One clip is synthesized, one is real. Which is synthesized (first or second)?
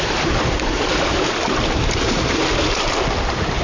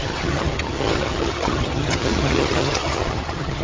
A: second